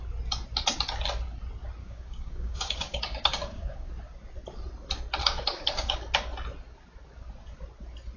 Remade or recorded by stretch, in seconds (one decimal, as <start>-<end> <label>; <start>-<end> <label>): 0.0-1.8 recorded; 1.8-3.9 remade; 3.9-5.2 recorded; 5.2-6.0 remade; 6.0-8.2 recorded